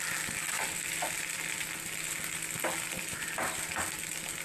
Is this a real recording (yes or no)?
yes